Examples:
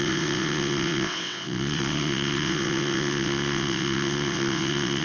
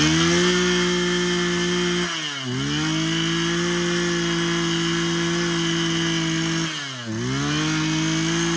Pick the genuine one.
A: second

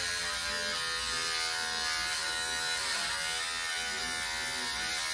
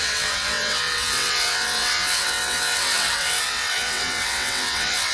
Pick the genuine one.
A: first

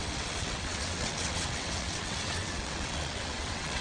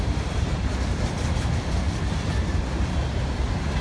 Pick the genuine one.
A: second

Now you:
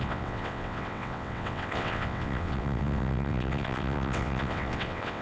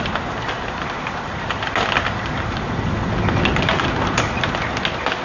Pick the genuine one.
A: second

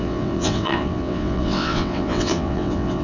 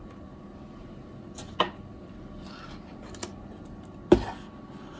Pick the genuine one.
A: second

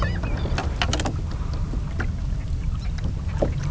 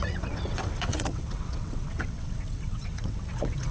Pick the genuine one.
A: first